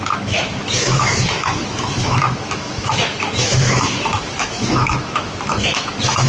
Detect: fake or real fake